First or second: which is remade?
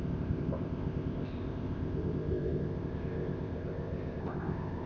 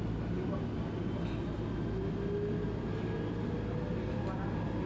first